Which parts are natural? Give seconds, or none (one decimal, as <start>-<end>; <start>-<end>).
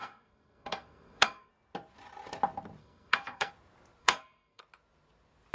1.5-2.8; 3.5-4.0; 4.6-5.5